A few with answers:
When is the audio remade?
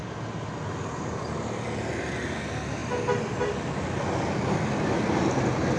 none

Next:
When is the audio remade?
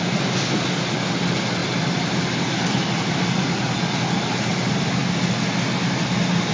1.6-2.1 (vocoder, BigVGAN v2); 4.5-5.0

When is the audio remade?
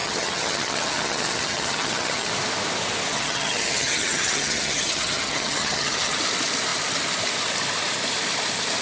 0.0-2.3 (vocoder, HiFi-GAN); 3.1-6.2